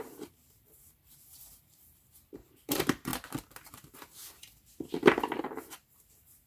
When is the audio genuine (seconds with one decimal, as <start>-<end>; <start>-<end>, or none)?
3.1-3.7; 4.2-5.4